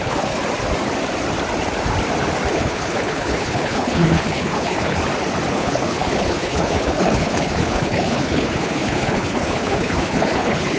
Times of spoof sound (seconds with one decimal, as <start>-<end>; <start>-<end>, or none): 0.0-0.4; 2.5-5.0; 5.5-10.8